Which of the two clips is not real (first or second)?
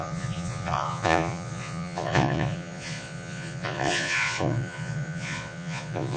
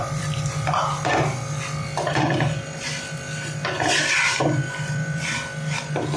first